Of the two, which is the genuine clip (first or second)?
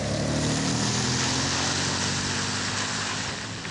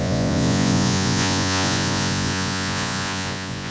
first